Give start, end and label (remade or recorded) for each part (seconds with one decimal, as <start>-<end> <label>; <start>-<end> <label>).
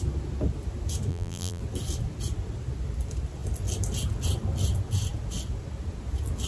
0.0-1.1 recorded; 1.1-1.6 remade; 1.6-6.5 recorded